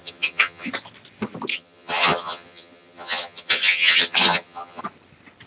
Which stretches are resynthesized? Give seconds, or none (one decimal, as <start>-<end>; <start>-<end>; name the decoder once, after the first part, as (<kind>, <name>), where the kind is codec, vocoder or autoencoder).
0.0-0.7 (vocoder, HiFi-GAN); 1.5-4.8